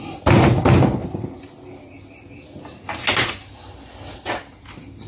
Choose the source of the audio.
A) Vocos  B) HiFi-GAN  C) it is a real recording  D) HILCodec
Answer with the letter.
C